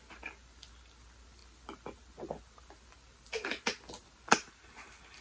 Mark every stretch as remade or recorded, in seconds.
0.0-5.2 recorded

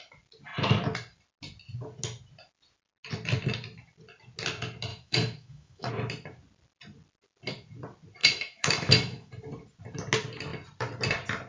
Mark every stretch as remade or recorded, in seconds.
0.0-4.9 recorded; 4.9-5.9 remade; 5.9-8.2 recorded; 8.2-9.3 remade; 9.3-11.5 recorded

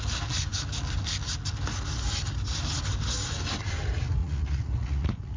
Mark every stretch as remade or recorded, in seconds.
0.0-4.2 recorded; 4.2-5.4 remade

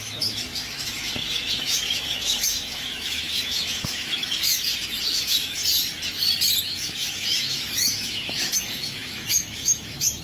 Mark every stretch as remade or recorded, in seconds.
0.0-5.6 remade; 5.6-6.6 recorded; 6.6-10.2 remade

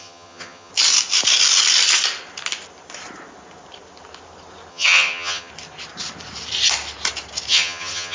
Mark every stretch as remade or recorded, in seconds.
0.0-0.7 remade; 0.7-4.7 recorded; 4.7-5.5 remade; 5.5-7.5 recorded; 7.5-8.1 remade

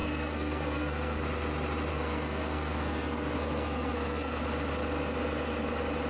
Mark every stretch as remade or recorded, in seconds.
0.0-1.2 remade; 1.2-1.9 recorded; 1.9-4.4 remade; 4.4-6.1 recorded

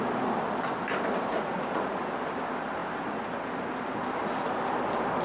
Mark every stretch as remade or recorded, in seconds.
0.0-1.3 recorded; 1.3-2.0 remade; 2.0-5.2 recorded

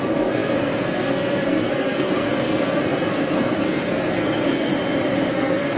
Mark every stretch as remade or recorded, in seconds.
0.0-4.7 remade; 4.7-5.3 recorded; 5.3-5.8 remade